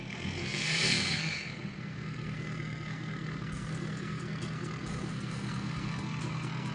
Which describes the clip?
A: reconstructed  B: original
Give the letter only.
A